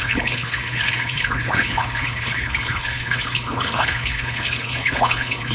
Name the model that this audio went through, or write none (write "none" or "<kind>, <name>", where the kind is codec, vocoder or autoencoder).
codec, HILCodec